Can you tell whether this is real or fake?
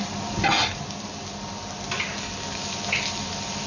real